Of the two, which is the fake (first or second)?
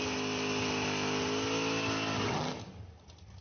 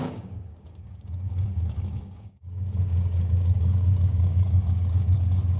second